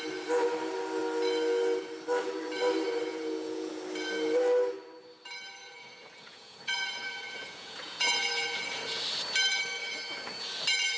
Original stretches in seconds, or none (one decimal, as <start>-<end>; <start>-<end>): 0.0-3.1; 3.7-5.6; 9.0-11.0